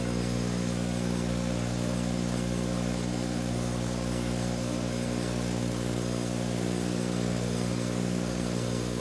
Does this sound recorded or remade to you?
remade